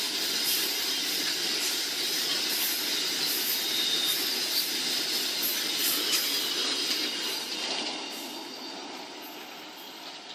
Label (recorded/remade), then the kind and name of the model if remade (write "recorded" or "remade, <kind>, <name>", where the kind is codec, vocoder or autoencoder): recorded